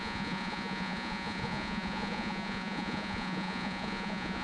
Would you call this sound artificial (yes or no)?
yes